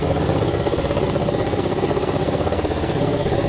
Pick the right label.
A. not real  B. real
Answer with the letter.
A